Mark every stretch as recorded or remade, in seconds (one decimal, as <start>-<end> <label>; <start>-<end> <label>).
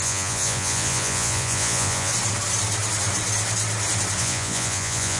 0.0-2.1 remade; 2.1-4.2 recorded; 4.2-5.2 remade